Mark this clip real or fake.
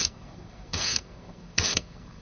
fake